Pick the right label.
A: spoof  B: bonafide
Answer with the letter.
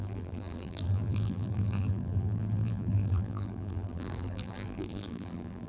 A